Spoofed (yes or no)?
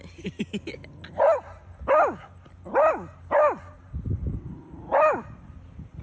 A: no